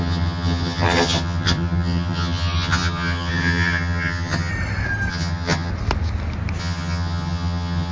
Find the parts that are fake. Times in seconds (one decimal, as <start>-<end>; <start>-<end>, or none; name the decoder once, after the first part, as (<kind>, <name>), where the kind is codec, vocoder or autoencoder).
0.0-4.5 (vocoder, HiFi-GAN); 5.1-5.7; 6.6-7.9